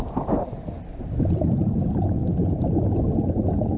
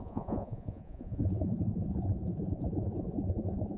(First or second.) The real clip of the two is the first